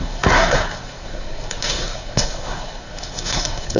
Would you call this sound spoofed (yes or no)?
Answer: yes